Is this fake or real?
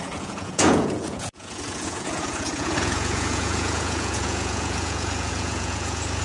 fake